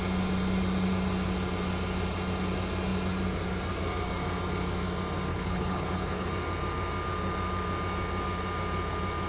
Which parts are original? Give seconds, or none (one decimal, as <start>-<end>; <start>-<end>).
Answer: 0.0-5.3; 6.3-9.3